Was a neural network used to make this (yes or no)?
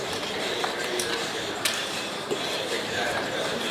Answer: yes